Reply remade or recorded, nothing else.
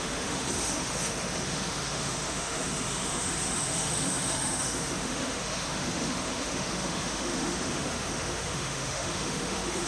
remade